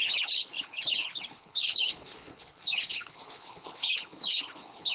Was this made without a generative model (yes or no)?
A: no